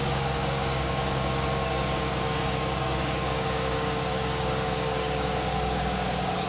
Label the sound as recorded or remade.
remade